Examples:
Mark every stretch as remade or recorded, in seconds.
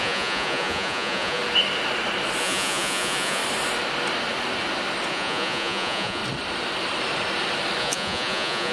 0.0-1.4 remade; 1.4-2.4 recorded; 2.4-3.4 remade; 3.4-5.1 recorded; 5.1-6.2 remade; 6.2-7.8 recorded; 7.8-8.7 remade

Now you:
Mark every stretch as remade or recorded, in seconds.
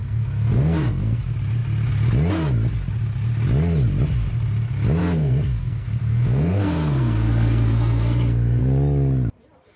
0.0-1.2 remade; 1.2-5.0 recorded; 5.0-8.6 remade; 8.6-9.8 recorded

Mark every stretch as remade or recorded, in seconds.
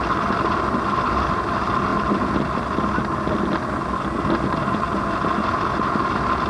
0.0-6.5 recorded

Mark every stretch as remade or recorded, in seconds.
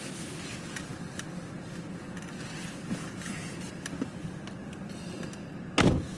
0.0-6.2 recorded